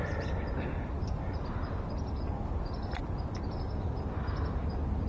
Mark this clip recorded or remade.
recorded